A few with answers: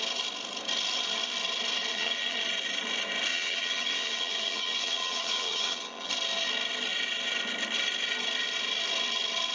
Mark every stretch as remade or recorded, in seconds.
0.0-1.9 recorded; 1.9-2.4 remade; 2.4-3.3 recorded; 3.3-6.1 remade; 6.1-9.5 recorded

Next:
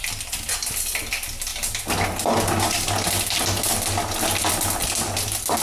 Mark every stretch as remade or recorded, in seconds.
0.0-5.6 recorded

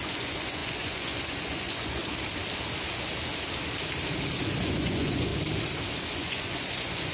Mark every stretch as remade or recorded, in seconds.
0.0-2.0 remade; 2.0-4.6 recorded; 4.6-5.3 remade; 5.3-6.1 recorded; 6.1-7.1 remade

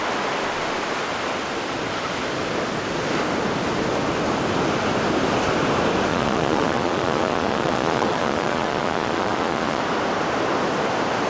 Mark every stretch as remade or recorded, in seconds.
0.0-6.1 recorded; 6.1-9.8 remade; 9.8-11.3 recorded

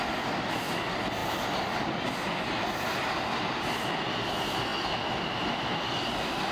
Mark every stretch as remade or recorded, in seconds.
0.0-6.5 recorded

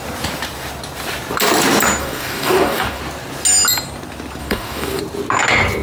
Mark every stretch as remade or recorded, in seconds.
0.0-2.0 recorded; 2.0-3.0 remade; 3.0-4.4 recorded; 4.4-5.0 remade; 5.0-5.8 recorded

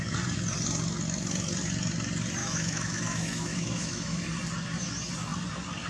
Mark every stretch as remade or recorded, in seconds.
0.0-2.4 recorded; 2.4-4.2 remade; 4.2-5.9 recorded

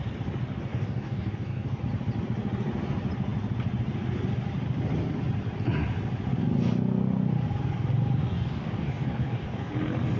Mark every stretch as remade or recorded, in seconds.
0.0-0.7 recorded; 0.7-1.8 remade; 1.8-8.2 recorded; 8.2-9.7 remade; 9.7-10.2 recorded